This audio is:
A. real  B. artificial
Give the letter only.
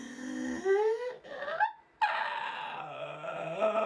A